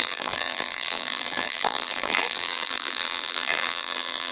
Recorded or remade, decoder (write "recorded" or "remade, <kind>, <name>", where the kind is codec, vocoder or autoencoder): remade, vocoder, BigVGAN v2